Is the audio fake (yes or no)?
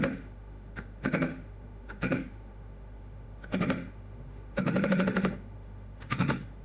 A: yes